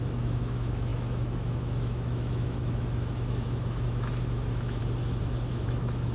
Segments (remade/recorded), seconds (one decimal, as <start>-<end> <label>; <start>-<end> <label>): 0.0-4.8 remade; 4.8-5.5 recorded; 5.5-6.1 remade